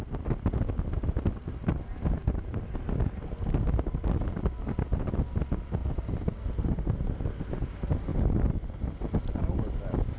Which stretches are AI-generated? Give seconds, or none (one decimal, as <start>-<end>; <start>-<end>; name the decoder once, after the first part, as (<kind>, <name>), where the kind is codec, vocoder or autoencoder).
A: none